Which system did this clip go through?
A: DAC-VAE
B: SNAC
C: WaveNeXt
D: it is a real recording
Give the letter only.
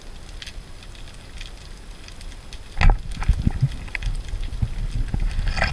D